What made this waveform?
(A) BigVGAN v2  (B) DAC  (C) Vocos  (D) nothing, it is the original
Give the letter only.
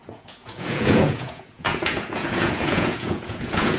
C